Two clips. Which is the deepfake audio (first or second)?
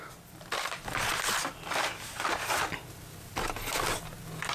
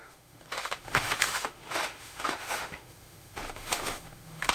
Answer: second